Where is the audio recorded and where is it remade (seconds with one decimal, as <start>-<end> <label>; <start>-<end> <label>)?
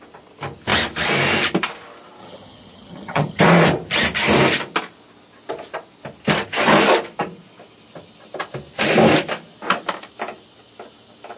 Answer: 0.0-2.2 recorded; 2.2-3.4 remade; 3.4-11.4 recorded